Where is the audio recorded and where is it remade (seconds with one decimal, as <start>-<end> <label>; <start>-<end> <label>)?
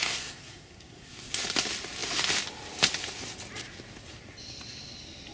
0.0-1.3 remade; 1.3-5.3 recorded